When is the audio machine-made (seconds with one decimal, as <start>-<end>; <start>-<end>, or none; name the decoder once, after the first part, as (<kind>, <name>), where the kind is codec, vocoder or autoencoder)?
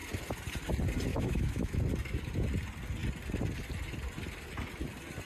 1.1-1.8 (autoencoder, DAC-VAE)